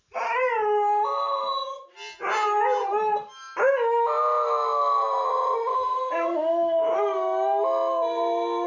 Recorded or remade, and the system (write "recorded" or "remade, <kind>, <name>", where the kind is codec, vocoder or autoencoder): recorded